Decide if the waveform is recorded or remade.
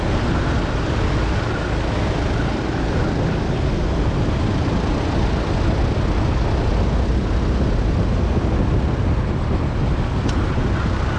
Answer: recorded